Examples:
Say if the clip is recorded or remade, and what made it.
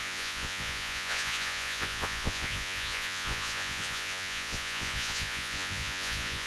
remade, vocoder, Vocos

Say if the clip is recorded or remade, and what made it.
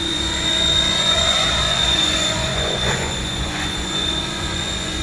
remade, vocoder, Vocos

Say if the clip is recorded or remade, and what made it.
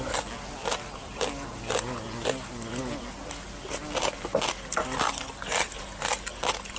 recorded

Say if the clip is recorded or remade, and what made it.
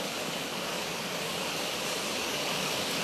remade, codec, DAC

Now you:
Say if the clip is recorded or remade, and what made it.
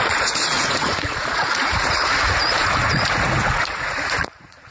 remade, vocoder, Vocos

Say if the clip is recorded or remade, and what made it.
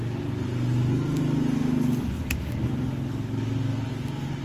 recorded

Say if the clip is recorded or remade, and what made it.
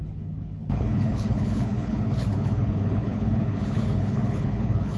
remade, codec, HILCodec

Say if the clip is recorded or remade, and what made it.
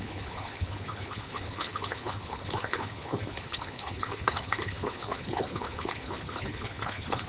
remade, codec, HILCodec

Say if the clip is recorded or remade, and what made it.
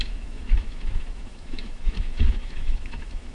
remade, autoencoder, DAC-VAE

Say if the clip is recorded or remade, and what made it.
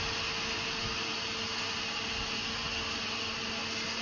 recorded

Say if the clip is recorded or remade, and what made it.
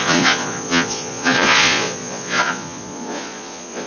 remade, vocoder, Vocos